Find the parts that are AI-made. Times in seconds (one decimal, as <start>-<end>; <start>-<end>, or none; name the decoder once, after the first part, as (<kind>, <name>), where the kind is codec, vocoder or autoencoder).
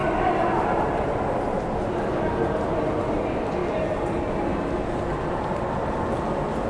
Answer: none